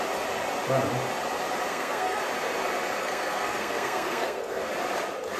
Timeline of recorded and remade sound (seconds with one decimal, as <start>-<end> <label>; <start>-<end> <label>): 0.0-1.7 recorded; 1.7-2.2 remade; 2.2-3.0 recorded; 3.0-4.7 remade; 4.7-5.4 recorded